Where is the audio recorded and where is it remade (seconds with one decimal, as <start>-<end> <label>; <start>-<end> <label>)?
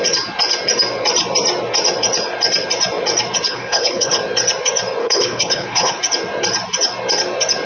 0.0-3.5 recorded; 3.5-4.2 remade; 4.2-5.0 recorded; 5.0-6.0 remade; 6.0-7.7 recorded